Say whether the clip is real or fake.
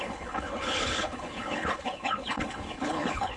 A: fake